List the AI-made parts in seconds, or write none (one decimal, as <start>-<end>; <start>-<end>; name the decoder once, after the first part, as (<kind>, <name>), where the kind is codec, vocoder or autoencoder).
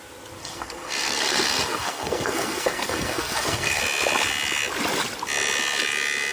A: 0.4-3.8 (codec, SNAC)